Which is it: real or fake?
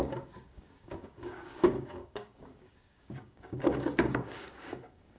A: fake